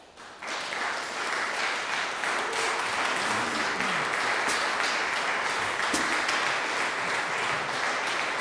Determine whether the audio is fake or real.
real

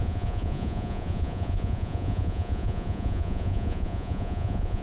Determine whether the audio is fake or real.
fake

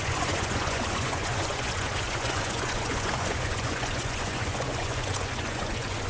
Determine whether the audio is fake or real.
fake